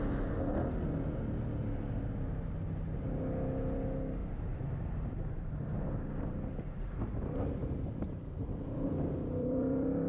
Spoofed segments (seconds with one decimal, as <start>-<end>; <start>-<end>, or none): 4.2-5.5; 7.6-10.1